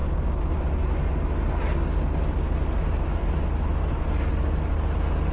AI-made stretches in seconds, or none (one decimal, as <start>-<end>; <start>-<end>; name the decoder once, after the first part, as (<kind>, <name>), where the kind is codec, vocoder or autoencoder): none